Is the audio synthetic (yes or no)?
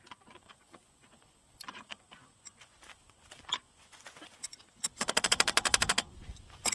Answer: yes